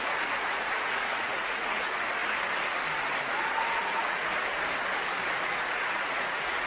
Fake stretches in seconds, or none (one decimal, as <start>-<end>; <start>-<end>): 0.0-2.2; 3.2-4.3; 5.4-6.7